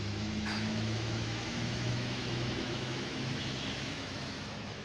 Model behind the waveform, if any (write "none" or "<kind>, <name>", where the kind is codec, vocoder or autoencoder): autoencoder, DAC-VAE